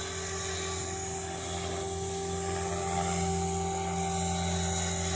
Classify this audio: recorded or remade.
recorded